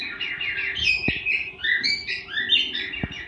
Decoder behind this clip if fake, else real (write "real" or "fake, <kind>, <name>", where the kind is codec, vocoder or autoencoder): real